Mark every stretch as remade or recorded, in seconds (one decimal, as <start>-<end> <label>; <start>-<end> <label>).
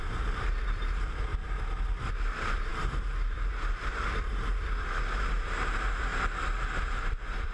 0.0-1.3 remade; 1.3-2.1 recorded; 2.1-6.1 remade; 6.1-6.8 recorded; 6.8-7.5 remade